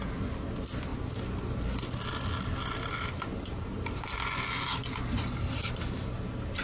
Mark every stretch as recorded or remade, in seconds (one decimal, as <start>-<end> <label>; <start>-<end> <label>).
0.0-6.6 recorded